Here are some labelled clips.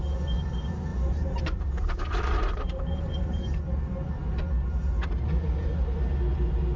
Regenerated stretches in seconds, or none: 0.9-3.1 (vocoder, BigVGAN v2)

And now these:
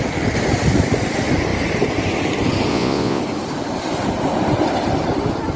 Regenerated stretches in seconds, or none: 2.7-3.2 (vocoder, Vocos)

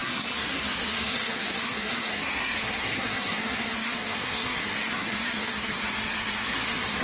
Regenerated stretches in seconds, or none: 0.0-7.0 (codec, SNAC)

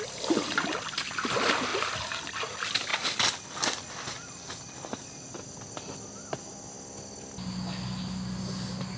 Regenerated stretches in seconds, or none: none

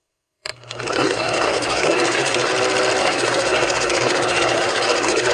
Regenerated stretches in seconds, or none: 0.0-2.5 (codec, SNAC); 3.0-5.3

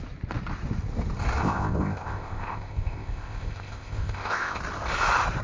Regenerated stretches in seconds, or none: 1.4-4.6 (codec, ZipCodec)